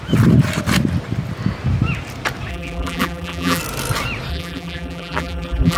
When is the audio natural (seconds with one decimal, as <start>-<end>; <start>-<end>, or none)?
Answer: 0.0-2.5; 3.6-4.3